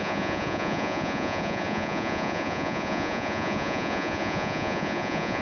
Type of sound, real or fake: fake